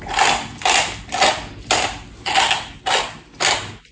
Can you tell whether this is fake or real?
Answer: real